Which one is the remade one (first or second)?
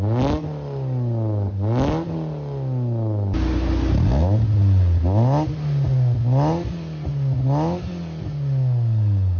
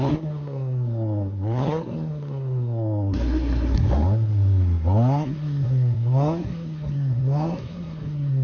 second